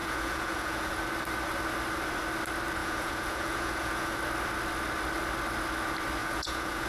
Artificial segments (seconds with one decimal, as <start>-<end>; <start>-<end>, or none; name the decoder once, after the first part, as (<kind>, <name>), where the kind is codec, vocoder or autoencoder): 0.0-1.0 (vocoder, Vocos); 2.8-4.2; 6.2-6.9